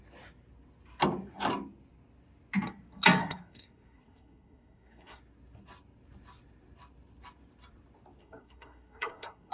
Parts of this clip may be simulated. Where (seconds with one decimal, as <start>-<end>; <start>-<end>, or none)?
3.2-5.2; 8.2-9.5